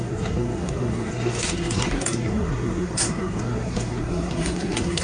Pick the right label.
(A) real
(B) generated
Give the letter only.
B